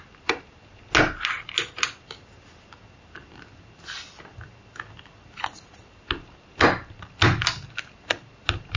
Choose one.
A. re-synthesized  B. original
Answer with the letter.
B